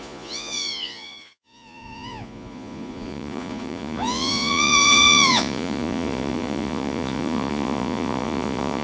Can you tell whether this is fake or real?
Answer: fake